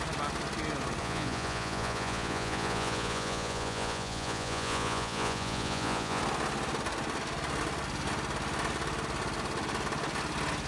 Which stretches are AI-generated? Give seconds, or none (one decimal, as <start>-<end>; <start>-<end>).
1.0-6.2